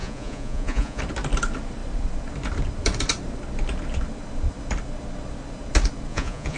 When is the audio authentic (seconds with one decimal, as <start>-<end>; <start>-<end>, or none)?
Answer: 1.0-6.1